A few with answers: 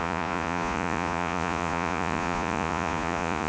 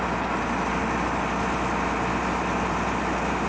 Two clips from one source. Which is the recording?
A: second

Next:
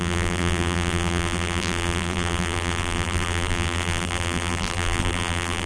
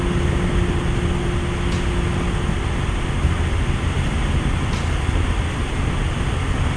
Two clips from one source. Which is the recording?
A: second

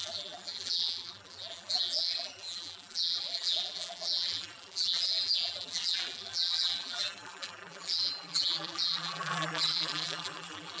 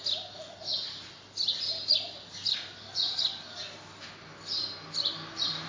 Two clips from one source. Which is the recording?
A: second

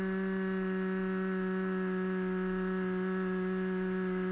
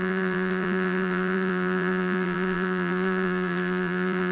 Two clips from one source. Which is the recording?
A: first